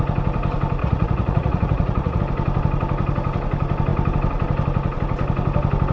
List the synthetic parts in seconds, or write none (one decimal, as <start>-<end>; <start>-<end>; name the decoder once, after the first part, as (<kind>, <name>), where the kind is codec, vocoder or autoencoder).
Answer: 0.8-2.2 (vocoder, Vocos)